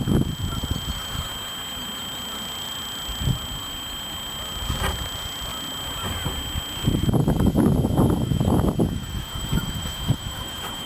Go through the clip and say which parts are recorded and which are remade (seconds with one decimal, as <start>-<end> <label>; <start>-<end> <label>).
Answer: 0.0-7.2 recorded; 7.2-10.9 remade